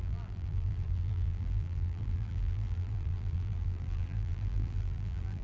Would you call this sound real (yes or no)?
no